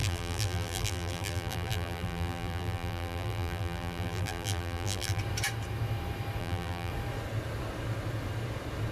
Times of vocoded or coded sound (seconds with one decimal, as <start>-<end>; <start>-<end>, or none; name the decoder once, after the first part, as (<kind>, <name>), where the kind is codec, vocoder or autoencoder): 0.0-5.2 (vocoder, BigVGAN v2); 6.4-6.9